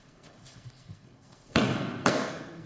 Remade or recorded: remade